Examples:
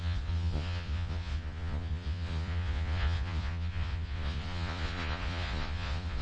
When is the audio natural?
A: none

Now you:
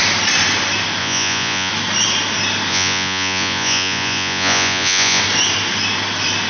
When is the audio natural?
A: 0.0-1.0; 1.7-2.7; 5.2-6.5

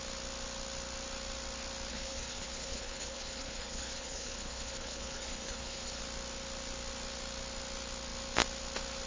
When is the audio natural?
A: 0.0-1.9; 6.0-9.1

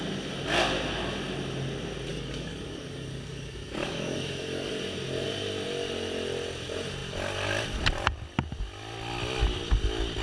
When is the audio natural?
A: 0.0-2.1; 4.7-10.2